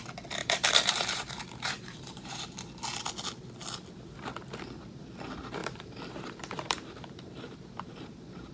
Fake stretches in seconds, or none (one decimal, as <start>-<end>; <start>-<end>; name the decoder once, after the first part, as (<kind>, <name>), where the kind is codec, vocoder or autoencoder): 0.4-2.4 (vocoder, BigVGAN v2); 5.6-8.5